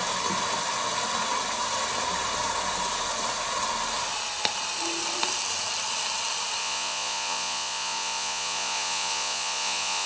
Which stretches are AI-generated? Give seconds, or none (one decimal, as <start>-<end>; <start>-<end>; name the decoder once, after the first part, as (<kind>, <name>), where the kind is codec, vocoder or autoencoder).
6.6-10.1 (vocoder, Vocos)